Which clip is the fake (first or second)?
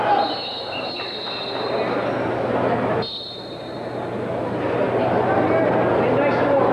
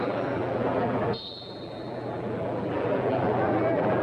second